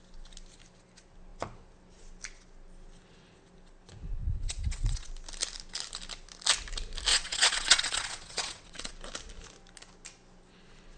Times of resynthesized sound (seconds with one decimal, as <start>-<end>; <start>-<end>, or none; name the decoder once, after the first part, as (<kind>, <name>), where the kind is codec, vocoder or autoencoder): 4.2-5.1 (vocoder, WaveNeXt); 7.1-8.9